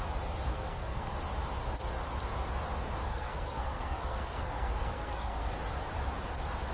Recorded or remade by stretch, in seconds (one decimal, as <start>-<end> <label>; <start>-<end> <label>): 0.0-0.5 recorded; 0.5-1.1 remade; 1.1-3.1 recorded; 3.1-5.5 remade; 5.5-6.7 recorded